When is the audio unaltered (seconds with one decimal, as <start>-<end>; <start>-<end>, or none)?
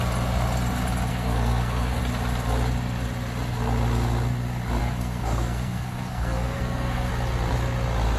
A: 0.0-1.1; 2.0-4.8; 7.1-8.2